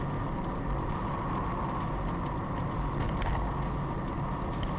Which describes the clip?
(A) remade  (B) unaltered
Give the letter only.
B